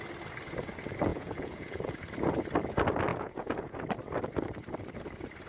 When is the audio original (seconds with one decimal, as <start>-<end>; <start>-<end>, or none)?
0.0-1.1; 2.0-3.1; 3.8-5.5